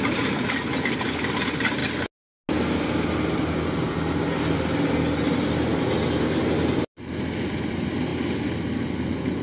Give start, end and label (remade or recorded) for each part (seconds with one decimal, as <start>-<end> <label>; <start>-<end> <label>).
0.0-9.4 recorded